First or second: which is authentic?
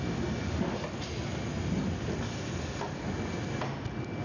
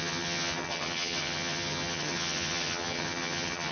first